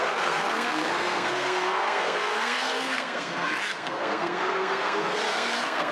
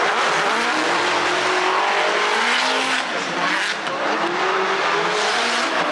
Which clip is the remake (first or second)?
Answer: first